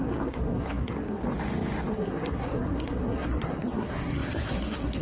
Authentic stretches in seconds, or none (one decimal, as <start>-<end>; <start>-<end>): 1.2-1.9